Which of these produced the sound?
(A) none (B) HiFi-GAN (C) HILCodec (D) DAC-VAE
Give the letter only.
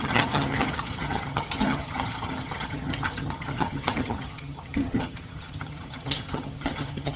B